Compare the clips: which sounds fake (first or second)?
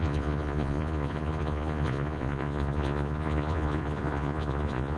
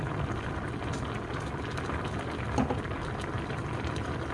first